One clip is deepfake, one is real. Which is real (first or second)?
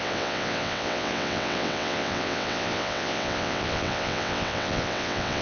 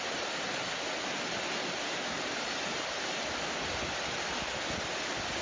second